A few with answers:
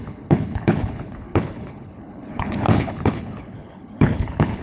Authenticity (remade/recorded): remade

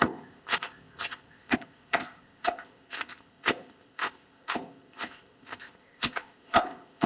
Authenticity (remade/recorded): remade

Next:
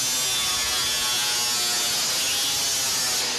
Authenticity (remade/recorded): recorded